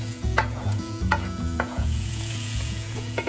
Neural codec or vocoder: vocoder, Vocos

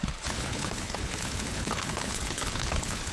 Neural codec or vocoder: codec, HILCodec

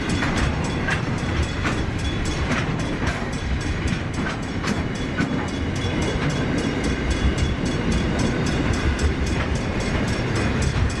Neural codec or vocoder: vocoder, BigVGAN v2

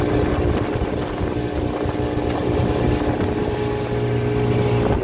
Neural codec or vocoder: none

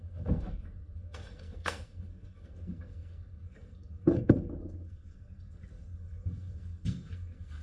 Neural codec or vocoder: codec, SNAC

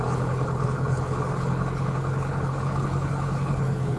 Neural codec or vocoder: codec, HILCodec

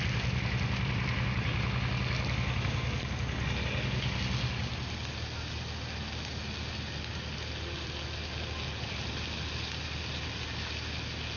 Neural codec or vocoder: none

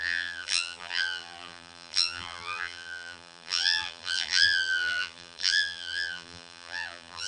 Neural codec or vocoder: vocoder, BigVGAN v2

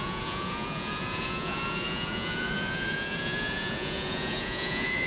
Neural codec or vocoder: vocoder, Vocos